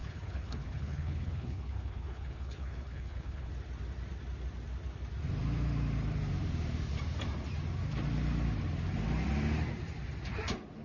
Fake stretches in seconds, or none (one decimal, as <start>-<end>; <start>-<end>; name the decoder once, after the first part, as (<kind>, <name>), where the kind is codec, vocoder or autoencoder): 0.0-3.5 (codec, HILCodec)